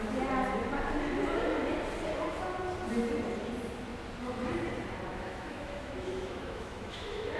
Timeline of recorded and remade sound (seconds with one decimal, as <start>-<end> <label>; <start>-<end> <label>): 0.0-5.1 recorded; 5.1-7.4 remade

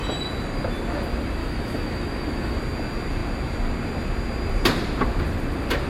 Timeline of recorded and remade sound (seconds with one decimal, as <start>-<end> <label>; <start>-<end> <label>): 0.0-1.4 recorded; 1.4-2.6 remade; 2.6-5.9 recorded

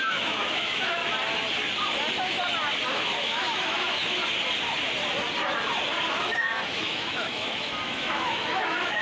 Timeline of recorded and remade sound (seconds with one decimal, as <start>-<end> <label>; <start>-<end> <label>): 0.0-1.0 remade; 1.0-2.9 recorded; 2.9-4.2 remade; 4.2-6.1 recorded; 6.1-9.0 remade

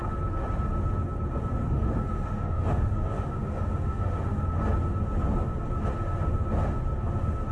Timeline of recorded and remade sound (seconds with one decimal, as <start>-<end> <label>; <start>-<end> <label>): 0.0-1.6 recorded; 1.6-4.5 remade; 4.5-7.5 recorded